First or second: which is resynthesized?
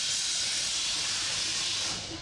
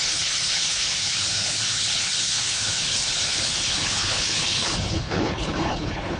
second